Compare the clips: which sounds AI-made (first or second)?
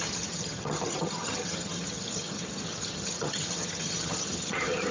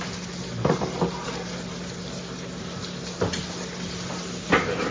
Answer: first